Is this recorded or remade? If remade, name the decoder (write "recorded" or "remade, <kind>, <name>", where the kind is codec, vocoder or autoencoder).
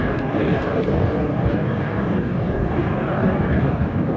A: remade, codec, DAC